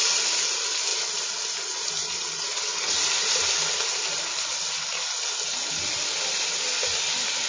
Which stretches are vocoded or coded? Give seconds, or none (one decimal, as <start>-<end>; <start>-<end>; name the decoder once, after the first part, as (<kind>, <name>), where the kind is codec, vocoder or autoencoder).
none